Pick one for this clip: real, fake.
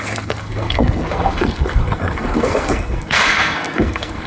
fake